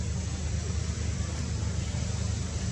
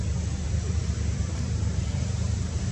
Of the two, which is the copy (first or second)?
second